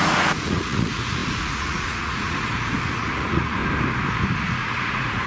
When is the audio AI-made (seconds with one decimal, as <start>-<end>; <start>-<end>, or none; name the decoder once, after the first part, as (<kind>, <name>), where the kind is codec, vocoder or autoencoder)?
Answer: 0.0-3.6 (vocoder, Vocos); 4.4-5.3